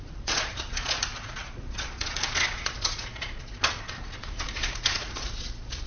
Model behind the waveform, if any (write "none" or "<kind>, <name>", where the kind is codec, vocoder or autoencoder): vocoder, Vocos